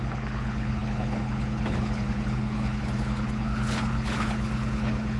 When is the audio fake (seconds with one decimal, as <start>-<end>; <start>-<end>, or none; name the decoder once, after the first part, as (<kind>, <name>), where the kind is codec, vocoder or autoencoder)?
0.0-5.2 (codec, HILCodec)